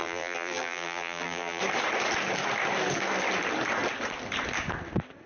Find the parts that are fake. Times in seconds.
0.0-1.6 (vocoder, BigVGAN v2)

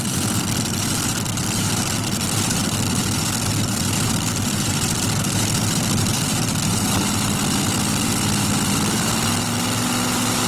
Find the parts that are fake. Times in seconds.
none

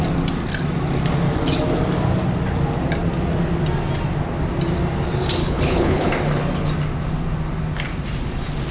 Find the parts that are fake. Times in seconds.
5.4-6.1 (codec, HILCodec)

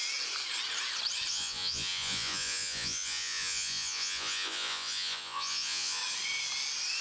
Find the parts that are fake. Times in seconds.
1.3-6.0 (vocoder, Vocos)